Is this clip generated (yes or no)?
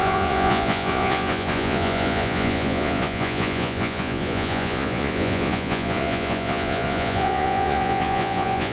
yes